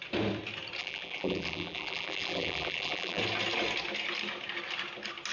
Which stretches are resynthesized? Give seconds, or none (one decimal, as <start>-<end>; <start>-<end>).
0.8-3.2